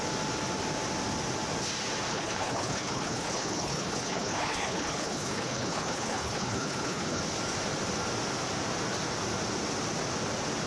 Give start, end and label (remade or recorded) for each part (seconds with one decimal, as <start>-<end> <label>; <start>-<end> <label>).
0.0-2.1 recorded; 2.1-7.2 remade; 7.2-10.7 recorded